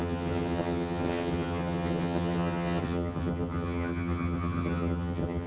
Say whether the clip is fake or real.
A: fake